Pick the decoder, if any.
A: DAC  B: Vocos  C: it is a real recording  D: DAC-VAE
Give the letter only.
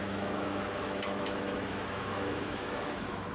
D